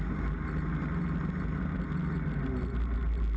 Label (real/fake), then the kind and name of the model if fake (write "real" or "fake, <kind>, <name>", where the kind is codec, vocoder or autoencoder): real